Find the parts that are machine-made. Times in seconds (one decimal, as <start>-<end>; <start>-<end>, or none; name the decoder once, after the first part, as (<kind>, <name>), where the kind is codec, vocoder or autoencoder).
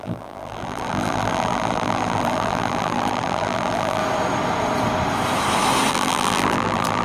0.0-4.0 (vocoder, BigVGAN v2); 5.9-7.0